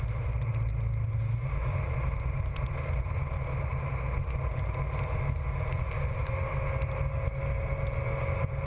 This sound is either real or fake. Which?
real